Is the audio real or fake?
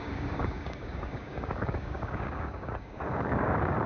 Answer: fake